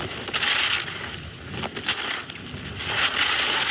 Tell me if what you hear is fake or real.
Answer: real